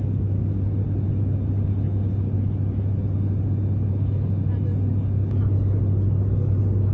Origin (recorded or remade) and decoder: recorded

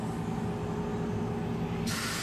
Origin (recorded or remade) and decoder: recorded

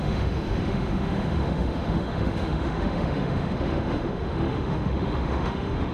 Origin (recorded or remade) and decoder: remade, autoencoder, DAC-VAE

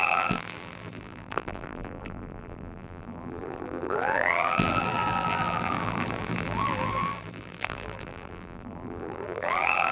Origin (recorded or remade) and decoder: remade, vocoder, BigVGAN v2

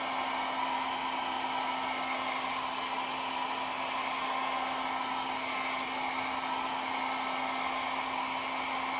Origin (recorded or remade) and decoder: recorded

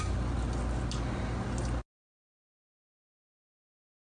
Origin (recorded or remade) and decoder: recorded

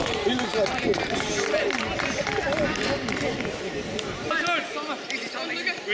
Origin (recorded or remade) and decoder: recorded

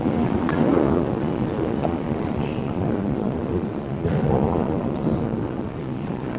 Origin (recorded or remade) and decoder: remade, vocoder, Vocos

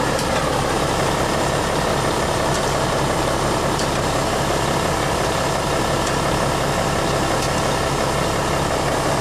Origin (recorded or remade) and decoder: recorded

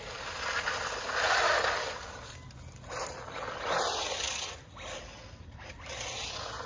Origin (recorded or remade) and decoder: recorded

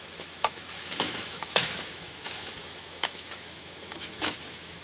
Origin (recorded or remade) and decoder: remade, autoencoder, DAC-VAE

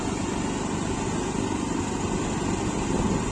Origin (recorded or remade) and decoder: recorded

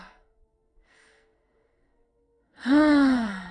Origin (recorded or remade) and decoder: remade, codec, SNAC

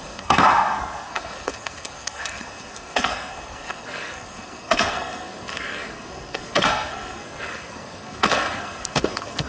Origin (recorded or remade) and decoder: remade, codec, SNAC